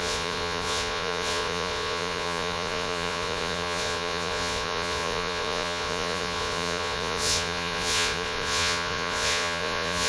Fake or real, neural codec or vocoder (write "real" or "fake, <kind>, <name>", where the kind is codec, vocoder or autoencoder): fake, vocoder, Vocos